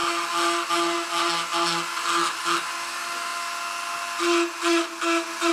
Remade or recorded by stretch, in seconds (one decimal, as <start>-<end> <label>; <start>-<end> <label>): 0.0-5.5 recorded